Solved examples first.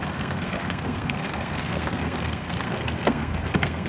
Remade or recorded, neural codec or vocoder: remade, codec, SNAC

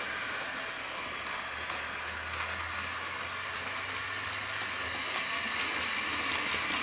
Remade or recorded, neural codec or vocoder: recorded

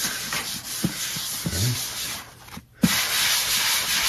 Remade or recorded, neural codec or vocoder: recorded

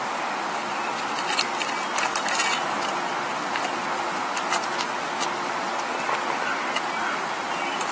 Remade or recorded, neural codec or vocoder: recorded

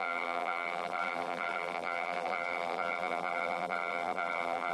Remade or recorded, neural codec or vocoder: remade, vocoder, BigVGAN v2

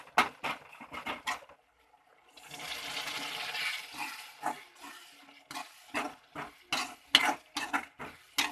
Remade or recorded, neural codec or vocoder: recorded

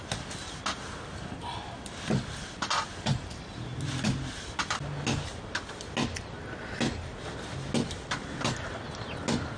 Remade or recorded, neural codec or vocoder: recorded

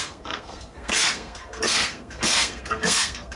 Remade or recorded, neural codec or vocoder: remade, codec, SNAC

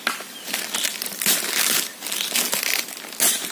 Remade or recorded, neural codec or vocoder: recorded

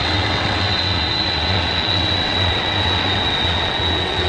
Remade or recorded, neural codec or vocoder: remade, vocoder, WaveNeXt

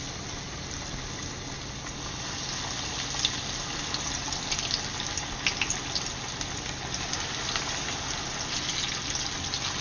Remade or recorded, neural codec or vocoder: recorded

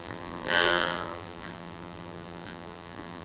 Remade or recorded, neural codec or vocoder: remade, vocoder, BigVGAN v2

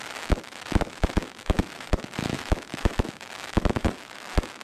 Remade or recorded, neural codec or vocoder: remade, autoencoder, DAC-VAE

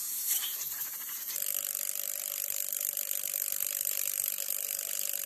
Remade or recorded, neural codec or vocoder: recorded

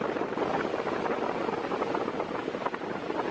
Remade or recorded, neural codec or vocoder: recorded